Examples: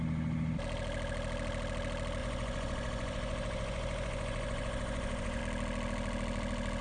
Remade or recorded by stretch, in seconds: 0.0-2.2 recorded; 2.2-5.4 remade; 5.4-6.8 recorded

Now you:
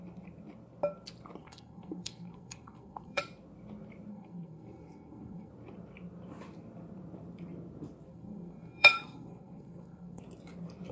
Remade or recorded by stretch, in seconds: 0.0-1.4 recorded; 1.4-3.2 remade; 3.2-4.1 recorded; 4.1-5.5 remade; 5.5-8.1 recorded; 8.1-10.2 remade; 10.2-10.9 recorded

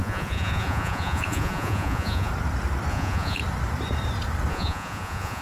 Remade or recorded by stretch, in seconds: 0.0-2.3 remade; 2.3-2.9 recorded; 2.9-3.4 remade; 3.4-4.5 recorded; 4.5-5.4 remade

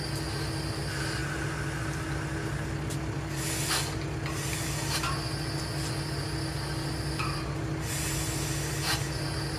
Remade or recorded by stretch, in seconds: 0.0-9.6 recorded

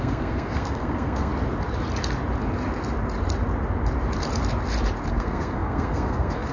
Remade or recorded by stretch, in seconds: 0.0-1.3 remade; 1.3-5.1 recorded; 5.1-6.5 remade

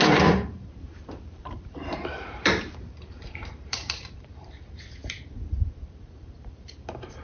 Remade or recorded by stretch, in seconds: 0.0-7.2 remade